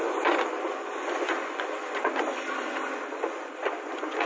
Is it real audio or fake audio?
fake